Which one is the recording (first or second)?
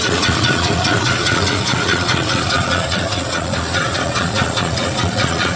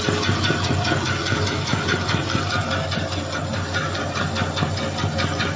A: second